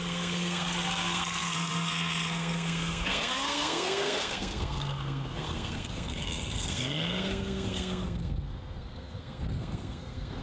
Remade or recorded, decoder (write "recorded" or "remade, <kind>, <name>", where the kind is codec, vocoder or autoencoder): remade, codec, SNAC